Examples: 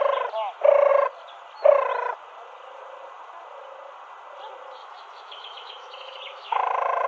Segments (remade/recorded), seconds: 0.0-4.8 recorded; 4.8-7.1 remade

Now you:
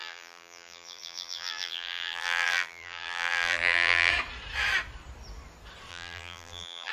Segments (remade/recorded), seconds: 0.0-4.1 remade; 4.1-5.9 recorded; 5.9-6.9 remade

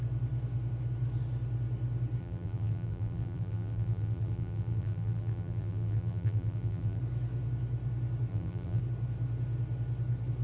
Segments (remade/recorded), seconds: 0.0-2.2 recorded; 2.2-7.0 remade; 7.0-8.3 recorded; 8.3-8.8 remade; 8.8-10.4 recorded

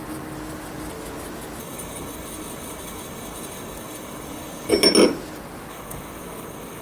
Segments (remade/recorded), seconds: 0.0-1.6 recorded; 1.6-4.7 remade; 4.7-5.7 recorded; 5.7-6.8 remade

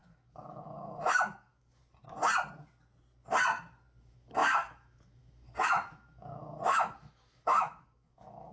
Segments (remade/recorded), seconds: 0.0-1.8 remade; 1.8-4.0 recorded; 4.0-8.5 remade

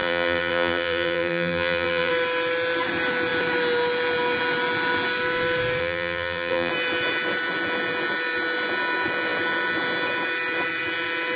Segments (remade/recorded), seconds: 0.0-2.1 remade; 2.1-5.8 recorded; 5.8-6.7 remade; 6.7-11.4 recorded

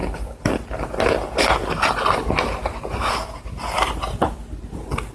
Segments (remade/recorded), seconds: 0.0-5.1 recorded